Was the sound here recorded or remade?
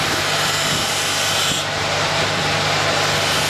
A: recorded